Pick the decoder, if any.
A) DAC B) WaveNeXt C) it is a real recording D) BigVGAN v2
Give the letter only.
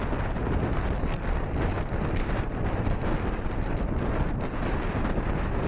C